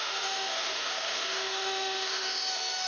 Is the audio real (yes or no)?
no